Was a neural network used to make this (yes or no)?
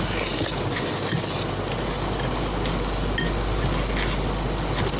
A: no